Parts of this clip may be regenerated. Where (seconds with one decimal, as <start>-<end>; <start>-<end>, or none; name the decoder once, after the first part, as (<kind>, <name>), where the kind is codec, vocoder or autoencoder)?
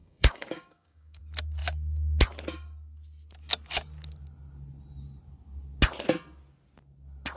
0.0-1.2 (codec, DAC)